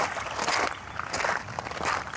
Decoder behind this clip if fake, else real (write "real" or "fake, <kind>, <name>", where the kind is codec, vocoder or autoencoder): real